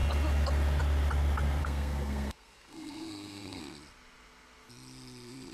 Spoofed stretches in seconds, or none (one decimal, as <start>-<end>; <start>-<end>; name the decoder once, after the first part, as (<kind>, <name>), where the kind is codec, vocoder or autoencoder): 1.6-3.6 (codec, SNAC)